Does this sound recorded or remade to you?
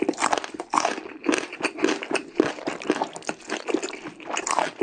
recorded